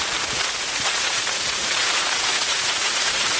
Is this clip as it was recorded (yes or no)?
no